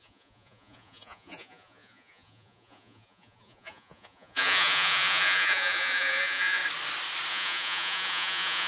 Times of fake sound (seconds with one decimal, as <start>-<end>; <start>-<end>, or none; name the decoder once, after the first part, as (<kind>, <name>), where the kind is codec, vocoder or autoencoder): 0.0-6.6 (vocoder, Vocos); 7.3-8.7